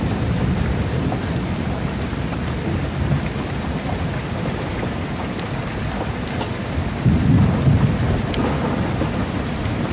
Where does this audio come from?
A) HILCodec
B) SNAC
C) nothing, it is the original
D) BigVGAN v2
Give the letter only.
C